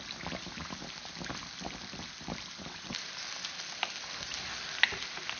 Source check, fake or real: real